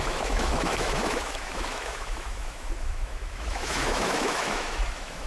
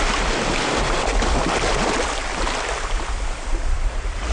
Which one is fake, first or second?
first